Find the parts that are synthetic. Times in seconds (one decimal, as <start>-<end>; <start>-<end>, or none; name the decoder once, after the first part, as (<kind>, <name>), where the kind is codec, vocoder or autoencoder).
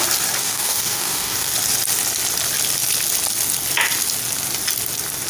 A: 0.4-1.5 (codec, DAC)